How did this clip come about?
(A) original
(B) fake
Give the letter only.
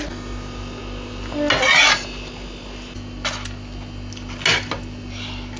A